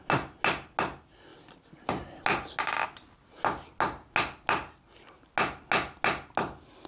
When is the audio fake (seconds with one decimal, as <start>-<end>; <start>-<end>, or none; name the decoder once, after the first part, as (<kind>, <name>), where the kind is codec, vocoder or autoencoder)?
none